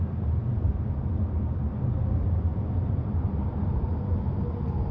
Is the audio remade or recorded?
recorded